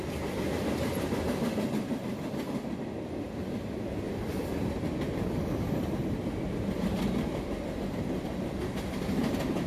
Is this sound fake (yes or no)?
no